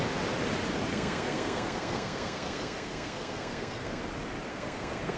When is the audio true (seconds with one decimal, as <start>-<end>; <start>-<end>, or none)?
0.0-0.9; 4.0-4.5